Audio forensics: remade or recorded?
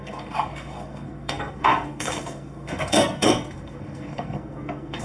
remade